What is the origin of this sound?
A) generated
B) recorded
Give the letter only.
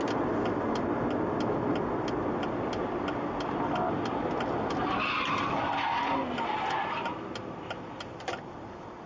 B